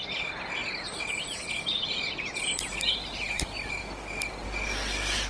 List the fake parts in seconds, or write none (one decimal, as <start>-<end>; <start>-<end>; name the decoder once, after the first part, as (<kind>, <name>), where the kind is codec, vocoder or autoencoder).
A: 0.6-3.8 (vocoder, BigVGAN v2)